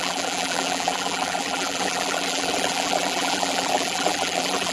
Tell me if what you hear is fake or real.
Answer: fake